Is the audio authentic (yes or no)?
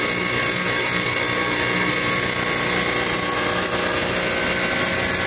yes